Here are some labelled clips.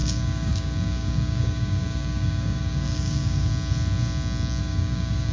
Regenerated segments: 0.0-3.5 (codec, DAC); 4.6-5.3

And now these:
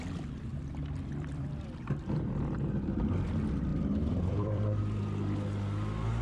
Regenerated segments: 0.5-3.3 (vocoder, BigVGAN v2); 3.7-4.8

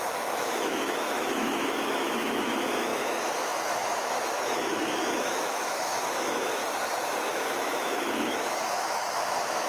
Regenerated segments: 0.0-6.6 (autoencoder, DAC-VAE); 7.3-9.7

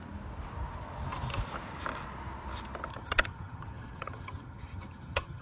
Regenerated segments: 2.9-5.4 (vocoder, HiFi-GAN)